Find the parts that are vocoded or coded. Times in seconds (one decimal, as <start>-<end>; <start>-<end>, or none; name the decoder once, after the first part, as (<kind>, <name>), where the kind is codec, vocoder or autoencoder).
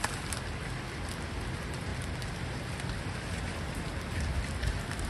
none